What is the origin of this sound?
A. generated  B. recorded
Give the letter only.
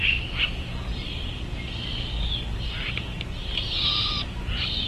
B